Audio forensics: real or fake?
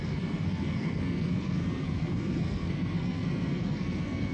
fake